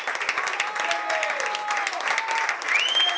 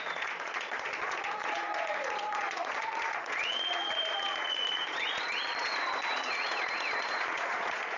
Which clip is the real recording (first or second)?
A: first